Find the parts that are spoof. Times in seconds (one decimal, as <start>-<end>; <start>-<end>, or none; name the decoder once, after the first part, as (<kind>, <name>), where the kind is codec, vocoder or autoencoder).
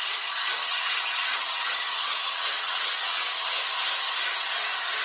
0.6-3.6 (vocoder, WaveNeXt)